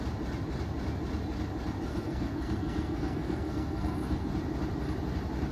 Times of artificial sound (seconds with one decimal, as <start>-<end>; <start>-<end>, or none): 1.9-4.3